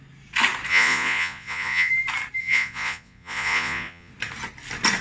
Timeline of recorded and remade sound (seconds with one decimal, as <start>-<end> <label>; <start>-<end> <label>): 0.0-0.7 recorded; 0.7-1.9 remade; 1.9-2.4 recorded; 2.4-4.1 remade; 4.1-5.0 recorded